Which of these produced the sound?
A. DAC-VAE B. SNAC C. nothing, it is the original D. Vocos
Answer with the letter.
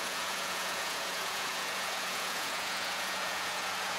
D